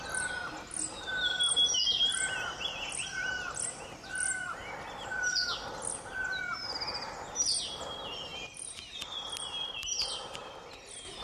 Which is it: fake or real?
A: real